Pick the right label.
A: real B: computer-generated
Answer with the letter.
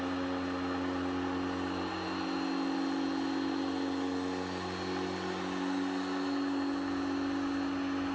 A